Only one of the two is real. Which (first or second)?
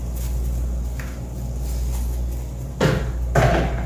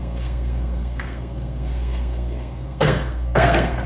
first